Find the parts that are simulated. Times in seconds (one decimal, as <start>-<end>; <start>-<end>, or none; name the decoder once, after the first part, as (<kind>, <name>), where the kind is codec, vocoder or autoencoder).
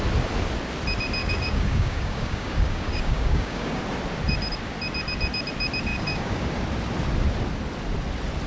1.2-3.8 (codec, DAC); 5.9-6.5